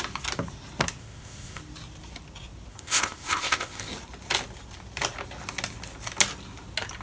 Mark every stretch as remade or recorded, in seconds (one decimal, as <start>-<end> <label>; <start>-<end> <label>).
0.0-1.0 recorded; 1.0-1.6 remade; 1.6-2.7 recorded; 2.7-3.9 remade; 3.9-7.0 recorded